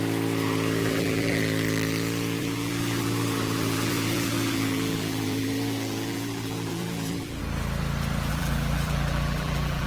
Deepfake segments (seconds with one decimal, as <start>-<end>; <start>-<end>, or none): 0.8-1.4; 2.4-7.4; 8.3-9.9